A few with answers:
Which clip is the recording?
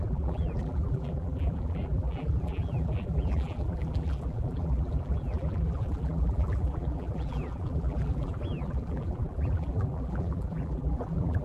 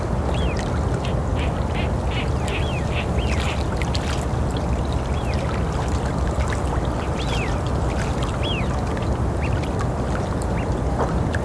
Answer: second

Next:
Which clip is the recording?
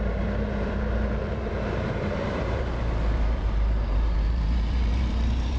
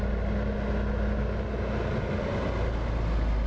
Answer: second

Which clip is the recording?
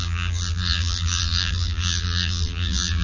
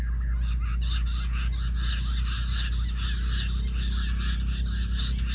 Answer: second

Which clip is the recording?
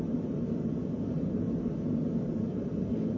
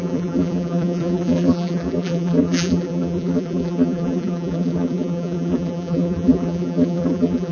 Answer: first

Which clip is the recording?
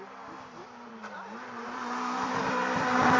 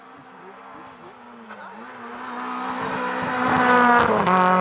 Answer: second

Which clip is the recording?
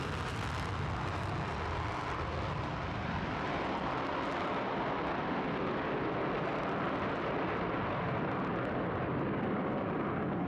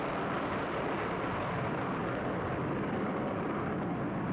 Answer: first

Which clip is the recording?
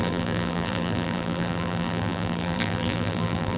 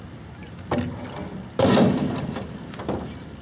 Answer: second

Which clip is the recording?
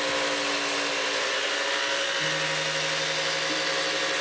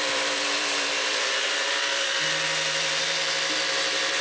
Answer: first